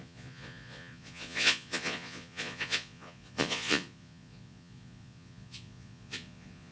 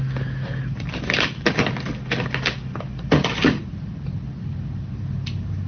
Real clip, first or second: second